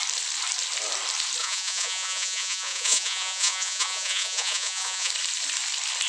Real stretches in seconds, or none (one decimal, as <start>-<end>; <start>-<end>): 0.0-1.4; 5.1-6.1

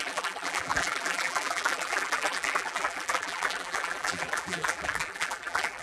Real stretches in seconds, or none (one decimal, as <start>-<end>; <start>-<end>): none

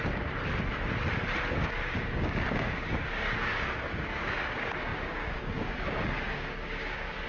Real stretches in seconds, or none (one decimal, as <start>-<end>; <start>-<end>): 0.0-1.5

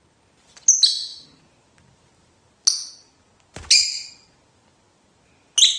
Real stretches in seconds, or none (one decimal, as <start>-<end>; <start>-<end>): 0.0-5.8

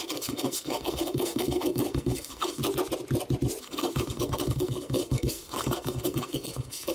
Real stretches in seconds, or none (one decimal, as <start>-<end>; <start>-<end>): 2.6-3.6

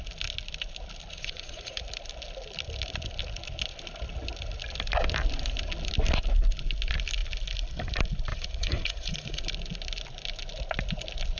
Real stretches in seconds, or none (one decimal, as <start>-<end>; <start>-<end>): 0.0-1.1; 1.8-8.3; 9.4-11.4

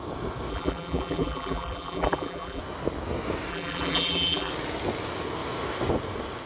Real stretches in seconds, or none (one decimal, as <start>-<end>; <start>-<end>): 0.0-0.5; 2.6-3.5; 4.5-6.5

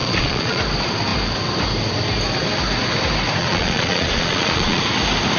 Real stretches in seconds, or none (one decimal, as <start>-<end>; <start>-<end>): 0.6-3.4; 4.8-5.4